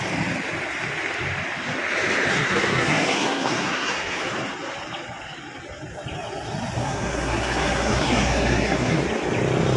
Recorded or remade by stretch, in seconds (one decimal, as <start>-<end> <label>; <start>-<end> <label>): 0.0-2.3 recorded; 2.3-4.2 remade; 4.2-6.8 recorded; 6.8-9.0 remade; 9.0-9.8 recorded